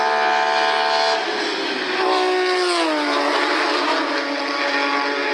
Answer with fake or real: real